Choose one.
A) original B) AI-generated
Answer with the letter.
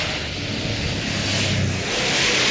A